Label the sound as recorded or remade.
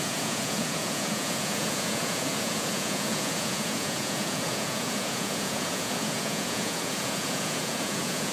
remade